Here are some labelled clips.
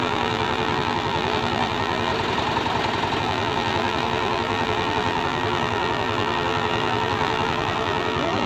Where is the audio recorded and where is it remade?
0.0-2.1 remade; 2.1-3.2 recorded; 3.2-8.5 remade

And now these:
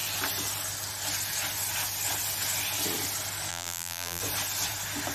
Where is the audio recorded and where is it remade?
0.0-3.5 recorded; 3.5-4.2 remade; 4.2-5.1 recorded

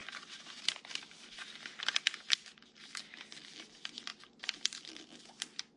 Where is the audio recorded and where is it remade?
0.0-5.8 recorded

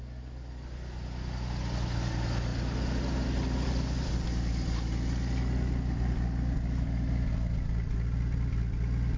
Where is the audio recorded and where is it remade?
0.0-9.2 recorded